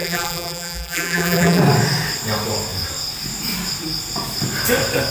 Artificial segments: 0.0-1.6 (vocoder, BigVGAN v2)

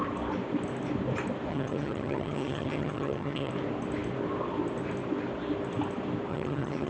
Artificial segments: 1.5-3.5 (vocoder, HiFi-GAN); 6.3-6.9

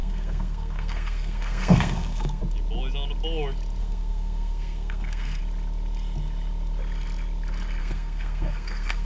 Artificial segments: 0.0-2.4 (codec, SNAC); 3.8-5.4; 7.8-9.1

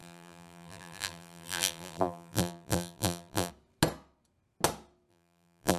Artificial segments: 0.0-3.5 (vocoder, BigVGAN v2); 5.1-5.8

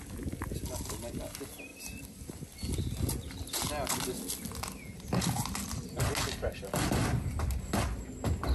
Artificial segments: none